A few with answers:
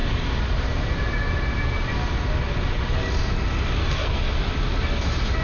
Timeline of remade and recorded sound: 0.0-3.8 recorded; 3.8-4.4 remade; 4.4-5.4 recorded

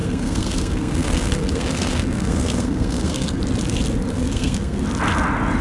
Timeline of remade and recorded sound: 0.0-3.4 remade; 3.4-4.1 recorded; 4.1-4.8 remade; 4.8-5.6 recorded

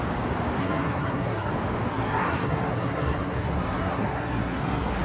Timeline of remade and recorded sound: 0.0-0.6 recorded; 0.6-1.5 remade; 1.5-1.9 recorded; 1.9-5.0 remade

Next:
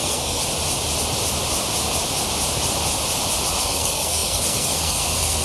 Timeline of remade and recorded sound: 0.0-0.4 remade; 0.4-3.6 recorded; 3.6-5.4 remade

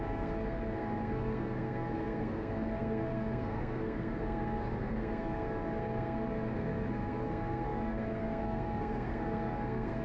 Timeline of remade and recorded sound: 0.0-10.0 remade

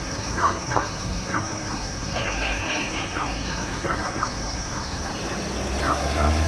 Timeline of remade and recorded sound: 0.0-5.1 remade; 5.1-5.8 recorded; 5.8-6.5 remade